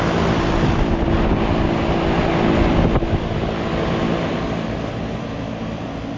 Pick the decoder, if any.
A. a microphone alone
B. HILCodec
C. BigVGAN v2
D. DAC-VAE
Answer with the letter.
A